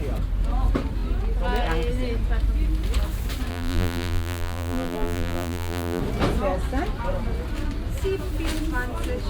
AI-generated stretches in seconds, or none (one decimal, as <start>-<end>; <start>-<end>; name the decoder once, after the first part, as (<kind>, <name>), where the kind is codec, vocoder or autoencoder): 3.5-6.0 (vocoder, BigVGAN v2)